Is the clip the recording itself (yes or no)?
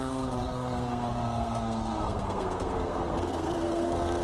no